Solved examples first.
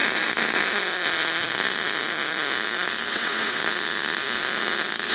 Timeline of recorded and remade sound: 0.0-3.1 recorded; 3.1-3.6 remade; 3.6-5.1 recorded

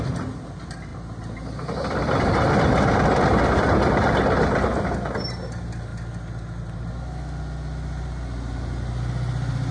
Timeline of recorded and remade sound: 0.0-9.7 recorded

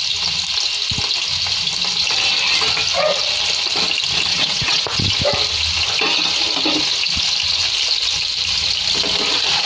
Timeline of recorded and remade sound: 0.0-4.3 recorded; 4.3-5.1 remade; 5.1-9.7 recorded

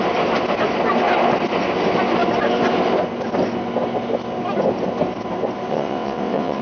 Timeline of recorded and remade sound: 0.0-5.7 recorded; 5.7-6.6 remade

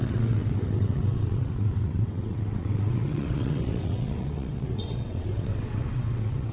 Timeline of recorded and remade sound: 0.0-6.5 remade